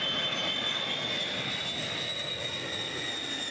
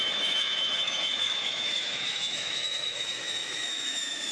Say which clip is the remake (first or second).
second